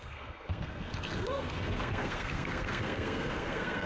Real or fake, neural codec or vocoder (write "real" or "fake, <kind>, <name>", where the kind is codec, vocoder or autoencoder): fake, codec, SNAC